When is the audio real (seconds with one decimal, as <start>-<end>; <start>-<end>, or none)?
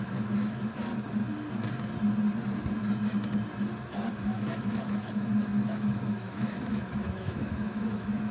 0.9-4.1